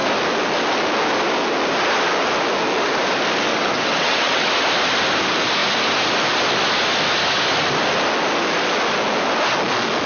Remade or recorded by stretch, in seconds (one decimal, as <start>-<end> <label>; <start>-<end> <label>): 0.0-3.5 recorded; 3.5-4.5 remade; 4.5-10.1 recorded